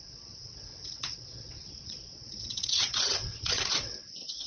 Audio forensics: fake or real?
fake